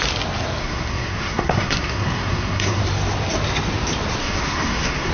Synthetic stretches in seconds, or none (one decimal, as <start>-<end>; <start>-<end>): 0.6-2.8; 4.2-5.1

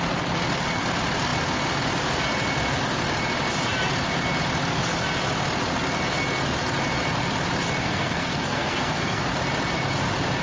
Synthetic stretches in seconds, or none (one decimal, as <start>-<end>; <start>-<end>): 7.8-9.2

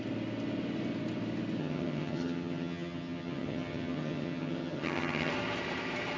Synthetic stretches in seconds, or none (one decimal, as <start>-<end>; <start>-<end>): 1.6-5.3

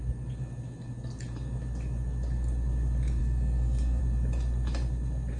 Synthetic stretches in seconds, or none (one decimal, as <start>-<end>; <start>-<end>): 3.2-4.0

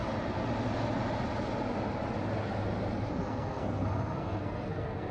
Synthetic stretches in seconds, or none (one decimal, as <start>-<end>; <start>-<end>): 3.1-5.1

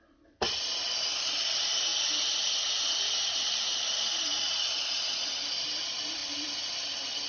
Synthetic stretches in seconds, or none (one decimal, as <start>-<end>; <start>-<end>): 6.2-7.3

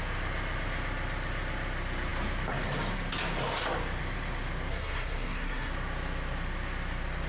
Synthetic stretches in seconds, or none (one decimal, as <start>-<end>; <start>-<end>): 4.7-5.7